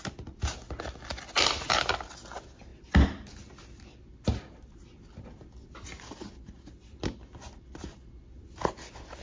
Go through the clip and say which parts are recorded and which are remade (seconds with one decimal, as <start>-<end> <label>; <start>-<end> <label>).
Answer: 0.0-9.2 recorded